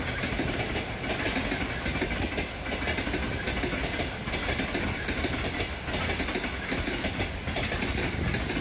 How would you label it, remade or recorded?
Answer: recorded